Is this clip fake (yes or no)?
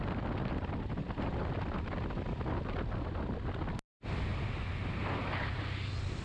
no